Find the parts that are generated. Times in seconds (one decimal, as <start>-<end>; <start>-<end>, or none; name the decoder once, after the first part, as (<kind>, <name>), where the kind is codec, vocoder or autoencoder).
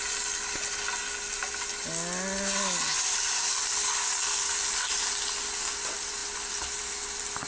none